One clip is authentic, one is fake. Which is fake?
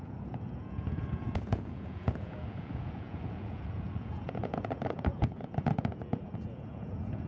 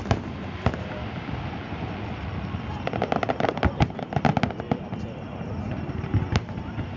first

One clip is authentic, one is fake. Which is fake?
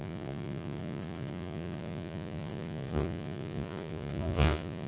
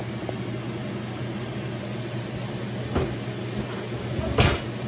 first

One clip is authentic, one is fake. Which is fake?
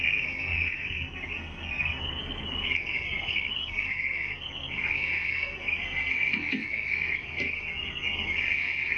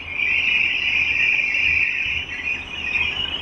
first